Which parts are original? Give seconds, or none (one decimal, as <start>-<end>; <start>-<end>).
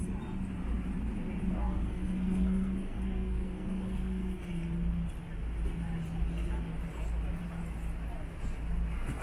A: 0.0-1.5; 4.5-9.2